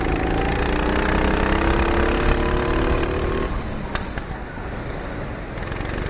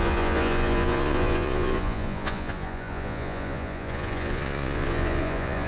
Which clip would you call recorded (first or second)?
first